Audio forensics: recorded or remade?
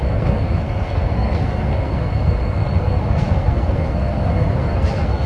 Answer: remade